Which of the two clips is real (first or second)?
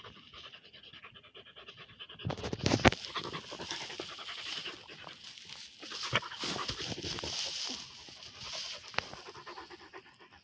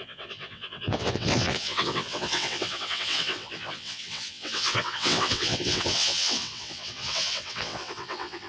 first